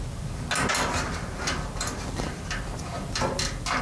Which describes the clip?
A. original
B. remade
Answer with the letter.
A